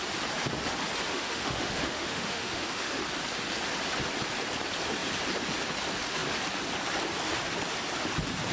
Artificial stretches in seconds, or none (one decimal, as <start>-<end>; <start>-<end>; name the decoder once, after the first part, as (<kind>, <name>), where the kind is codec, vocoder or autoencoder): 1.1-3.0 (autoencoder, DAC-VAE)